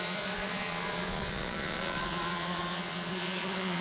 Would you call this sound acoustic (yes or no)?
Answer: no